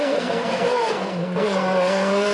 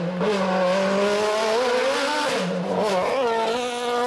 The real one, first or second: second